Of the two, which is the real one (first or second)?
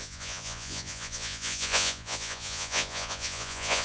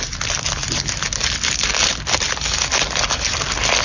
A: second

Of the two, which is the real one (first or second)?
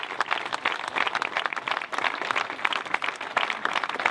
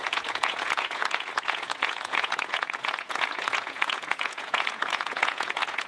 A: first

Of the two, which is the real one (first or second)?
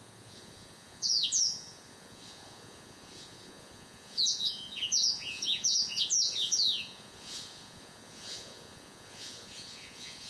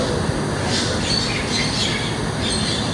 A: second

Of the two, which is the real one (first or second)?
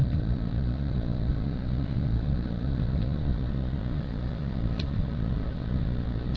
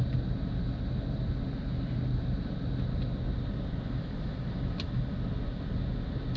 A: second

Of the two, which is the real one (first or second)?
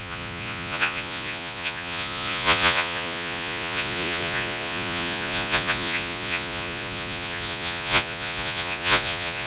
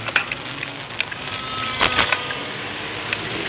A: second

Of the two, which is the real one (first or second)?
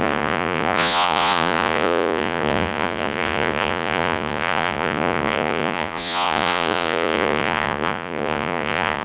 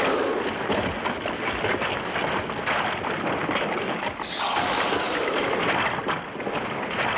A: second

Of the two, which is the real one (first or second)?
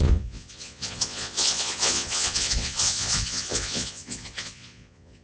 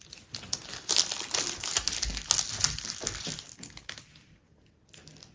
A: second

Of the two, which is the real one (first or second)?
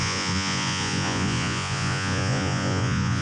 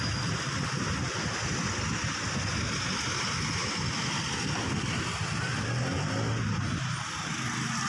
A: second